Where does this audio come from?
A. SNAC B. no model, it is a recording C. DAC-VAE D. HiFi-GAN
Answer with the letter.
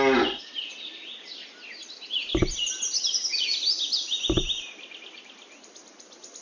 B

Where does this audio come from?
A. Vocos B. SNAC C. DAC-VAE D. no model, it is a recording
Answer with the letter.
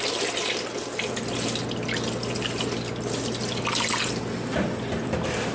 D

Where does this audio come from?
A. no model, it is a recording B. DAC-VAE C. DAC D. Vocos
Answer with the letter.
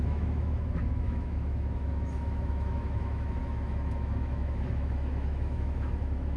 B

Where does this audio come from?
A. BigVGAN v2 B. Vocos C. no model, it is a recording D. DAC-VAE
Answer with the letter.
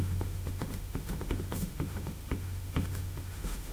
D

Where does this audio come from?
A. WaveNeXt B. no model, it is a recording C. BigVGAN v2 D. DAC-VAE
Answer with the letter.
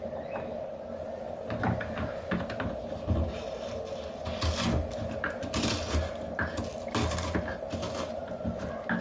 B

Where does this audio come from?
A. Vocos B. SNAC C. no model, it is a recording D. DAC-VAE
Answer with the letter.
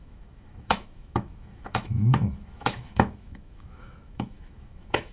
D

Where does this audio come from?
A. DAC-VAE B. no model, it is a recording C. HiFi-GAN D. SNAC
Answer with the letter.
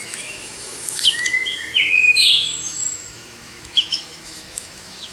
A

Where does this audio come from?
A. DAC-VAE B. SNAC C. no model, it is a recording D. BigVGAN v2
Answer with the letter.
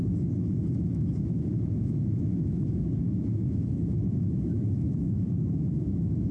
A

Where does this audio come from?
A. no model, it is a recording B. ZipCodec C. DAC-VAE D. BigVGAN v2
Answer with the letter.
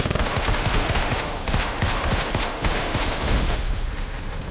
C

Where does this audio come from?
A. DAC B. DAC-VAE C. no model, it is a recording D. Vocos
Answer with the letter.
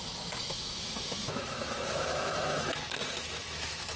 B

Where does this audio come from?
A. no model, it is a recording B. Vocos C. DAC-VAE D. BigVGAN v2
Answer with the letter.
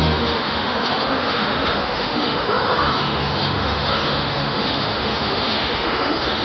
C